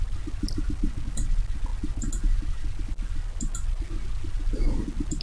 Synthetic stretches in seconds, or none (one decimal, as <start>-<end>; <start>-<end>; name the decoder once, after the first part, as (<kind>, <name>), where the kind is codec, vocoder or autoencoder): none